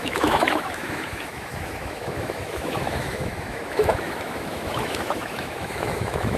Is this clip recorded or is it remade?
remade